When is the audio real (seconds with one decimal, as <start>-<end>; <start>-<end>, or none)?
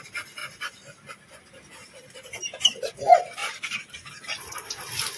0.0-5.2